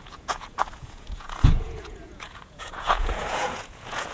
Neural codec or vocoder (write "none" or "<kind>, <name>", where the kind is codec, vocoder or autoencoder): vocoder, Vocos